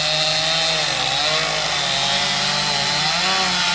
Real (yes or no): yes